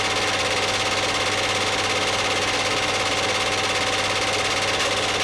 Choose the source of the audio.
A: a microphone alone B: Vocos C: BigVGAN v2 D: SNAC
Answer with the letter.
A